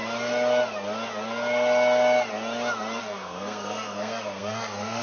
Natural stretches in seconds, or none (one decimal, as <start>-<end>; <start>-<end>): 0.0-3.0